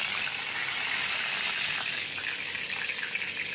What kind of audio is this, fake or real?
real